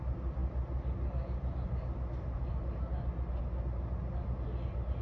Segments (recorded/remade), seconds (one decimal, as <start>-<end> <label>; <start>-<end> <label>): 0.0-5.0 recorded